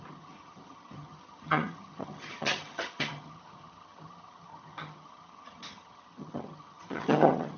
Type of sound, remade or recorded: remade